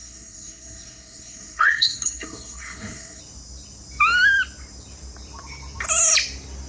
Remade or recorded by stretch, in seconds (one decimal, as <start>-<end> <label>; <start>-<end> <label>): 0.0-3.2 remade; 3.2-6.7 recorded